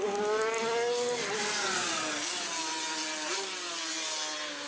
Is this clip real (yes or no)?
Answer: yes